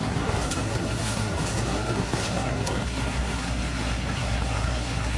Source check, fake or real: fake